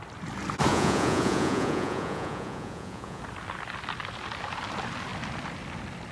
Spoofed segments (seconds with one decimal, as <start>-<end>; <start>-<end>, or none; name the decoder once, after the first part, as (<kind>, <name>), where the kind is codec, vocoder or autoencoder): 0.7-3.2 (vocoder, Vocos)